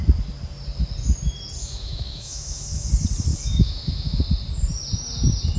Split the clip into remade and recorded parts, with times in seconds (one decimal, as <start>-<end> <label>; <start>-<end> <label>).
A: 0.0-1.6 recorded; 1.6-2.9 remade; 2.9-3.3 recorded; 3.3-4.2 remade; 4.2-5.6 recorded